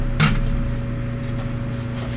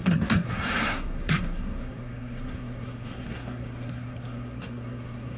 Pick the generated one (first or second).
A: second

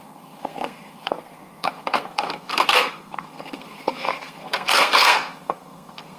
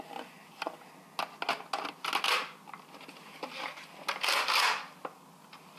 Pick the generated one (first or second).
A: first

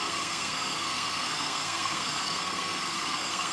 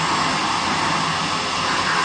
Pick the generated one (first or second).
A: first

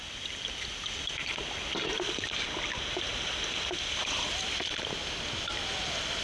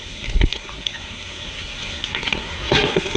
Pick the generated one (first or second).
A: second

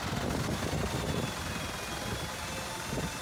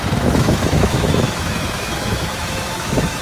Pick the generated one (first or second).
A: second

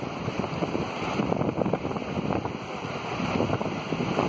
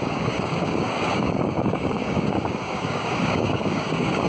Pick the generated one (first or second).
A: second